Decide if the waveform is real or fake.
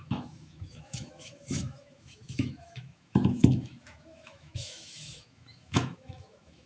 fake